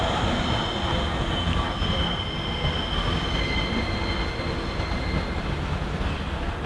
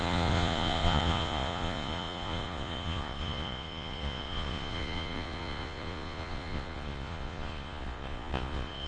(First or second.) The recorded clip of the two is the first